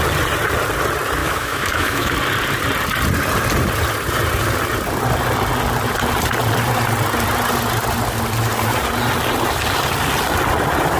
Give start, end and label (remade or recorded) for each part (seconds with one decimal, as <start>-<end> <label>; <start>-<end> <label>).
0.0-1.2 recorded; 1.2-2.1 remade; 2.1-11.0 recorded